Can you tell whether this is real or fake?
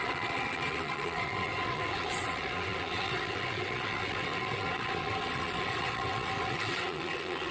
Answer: fake